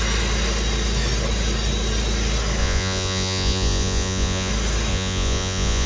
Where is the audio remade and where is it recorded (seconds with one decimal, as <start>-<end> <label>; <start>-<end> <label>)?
0.0-2.6 recorded; 2.6-4.5 remade; 4.5-4.9 recorded; 4.9-5.9 remade